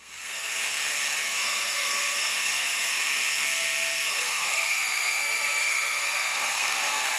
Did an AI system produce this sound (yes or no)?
yes